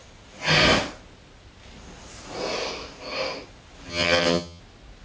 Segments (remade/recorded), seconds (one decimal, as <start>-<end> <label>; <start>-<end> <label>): 0.0-3.9 recorded; 3.9-4.6 remade; 4.6-5.0 recorded